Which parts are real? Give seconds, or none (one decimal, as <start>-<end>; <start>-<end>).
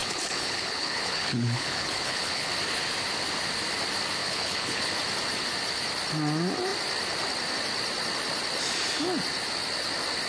2.5-4.2; 4.9-10.3